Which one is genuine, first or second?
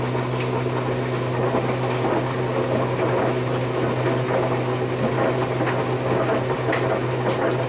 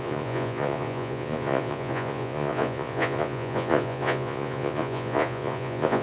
first